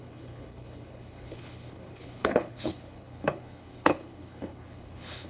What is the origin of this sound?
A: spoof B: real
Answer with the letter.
A